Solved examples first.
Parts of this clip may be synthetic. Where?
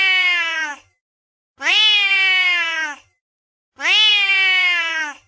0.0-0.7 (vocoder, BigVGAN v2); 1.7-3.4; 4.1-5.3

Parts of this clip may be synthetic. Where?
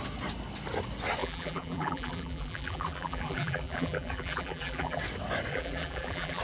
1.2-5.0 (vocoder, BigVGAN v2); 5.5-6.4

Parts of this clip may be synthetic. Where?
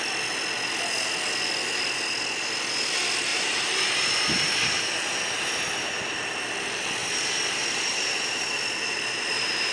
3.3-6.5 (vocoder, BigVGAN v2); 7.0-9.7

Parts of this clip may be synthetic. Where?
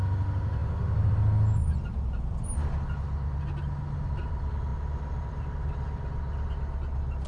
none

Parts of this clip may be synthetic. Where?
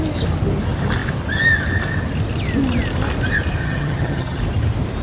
3.6-4.4 (vocoder, HiFi-GAN)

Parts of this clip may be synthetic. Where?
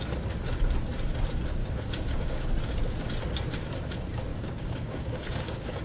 1.6-2.5 (codec, DAC); 4.3-5.8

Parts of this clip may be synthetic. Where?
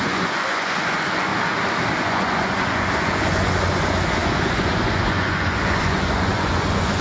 0.0-1.3 (vocoder, Vocos); 2.0-7.0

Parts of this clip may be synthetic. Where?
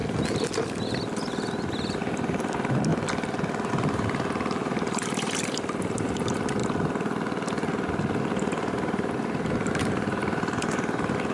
2.1-2.9 (vocoder, BigVGAN v2); 3.7-6.6; 8.3-11.3